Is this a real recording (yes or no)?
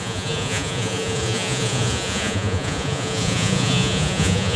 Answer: no